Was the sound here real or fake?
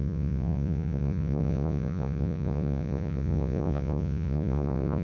fake